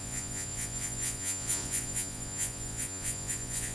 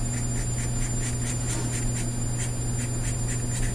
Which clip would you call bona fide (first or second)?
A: second